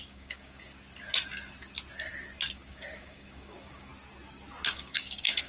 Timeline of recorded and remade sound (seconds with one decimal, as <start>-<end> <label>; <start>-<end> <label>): 0.0-0.7 remade; 0.7-2.5 recorded; 2.5-3.9 remade; 3.9-4.7 recorded; 4.7-5.5 remade